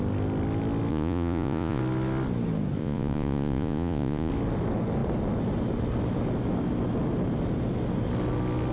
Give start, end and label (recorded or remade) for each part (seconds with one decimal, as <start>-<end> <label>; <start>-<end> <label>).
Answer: 0.0-0.9 recorded; 0.9-1.8 remade; 1.8-2.8 recorded; 2.8-4.3 remade; 4.3-8.7 recorded